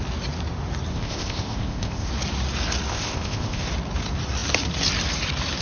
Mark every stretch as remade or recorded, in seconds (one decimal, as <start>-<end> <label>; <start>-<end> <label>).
0.0-0.9 recorded; 0.9-2.1 remade; 2.1-2.9 recorded; 2.9-3.7 remade; 3.7-5.6 recorded